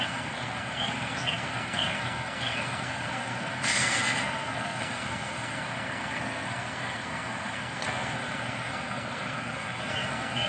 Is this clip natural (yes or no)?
no